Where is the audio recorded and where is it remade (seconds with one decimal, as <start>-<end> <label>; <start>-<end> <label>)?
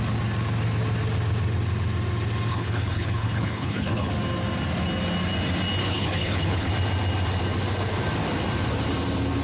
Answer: 0.0-2.5 recorded; 2.5-4.1 remade; 4.1-5.8 recorded; 5.8-6.7 remade; 6.7-9.4 recorded